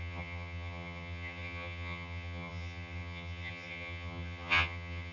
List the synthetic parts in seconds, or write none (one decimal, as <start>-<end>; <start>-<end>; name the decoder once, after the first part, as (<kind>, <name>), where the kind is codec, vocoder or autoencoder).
0.0-5.1 (vocoder, HiFi-GAN)